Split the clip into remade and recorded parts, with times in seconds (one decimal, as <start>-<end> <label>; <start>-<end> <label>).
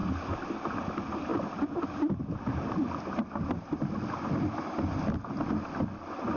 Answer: 0.0-6.4 recorded